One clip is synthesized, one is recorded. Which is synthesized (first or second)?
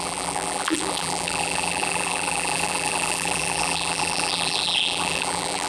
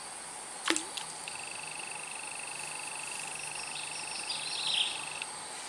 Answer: first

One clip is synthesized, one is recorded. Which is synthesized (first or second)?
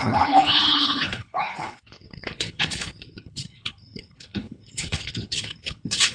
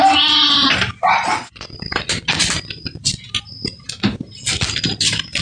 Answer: first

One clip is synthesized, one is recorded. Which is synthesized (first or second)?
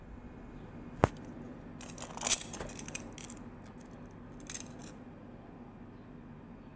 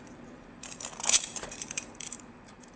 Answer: second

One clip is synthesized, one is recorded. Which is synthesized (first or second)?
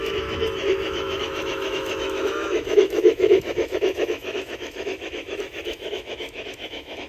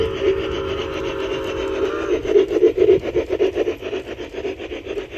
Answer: first